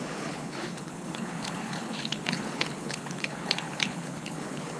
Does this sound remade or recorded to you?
remade